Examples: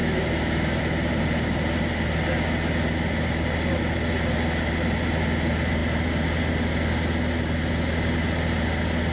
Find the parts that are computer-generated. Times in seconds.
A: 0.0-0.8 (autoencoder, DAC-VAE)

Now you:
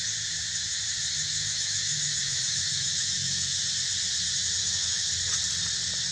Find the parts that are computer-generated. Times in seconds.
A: 1.2-3.7 (autoencoder, DAC-VAE); 4.6-5.1

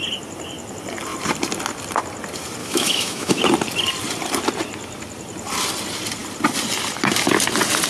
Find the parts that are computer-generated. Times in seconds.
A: 2.6-3.4 (autoencoder, DAC-VAE)

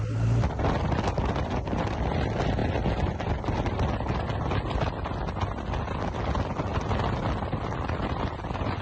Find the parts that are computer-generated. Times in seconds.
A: none

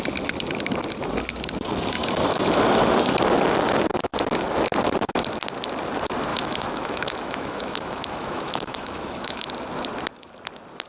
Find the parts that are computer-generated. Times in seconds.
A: 6.3-9.5 (autoencoder, DAC-VAE)